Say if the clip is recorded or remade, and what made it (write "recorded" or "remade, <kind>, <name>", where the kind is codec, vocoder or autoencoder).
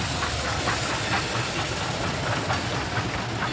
recorded